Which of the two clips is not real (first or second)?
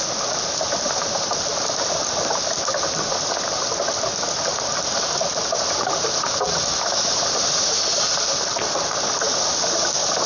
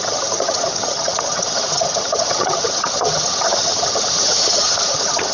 second